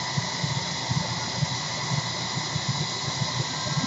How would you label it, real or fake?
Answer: real